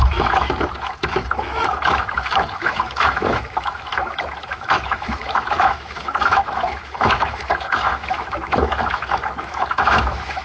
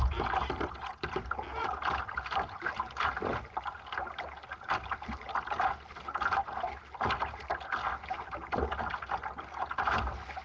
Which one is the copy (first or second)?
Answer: first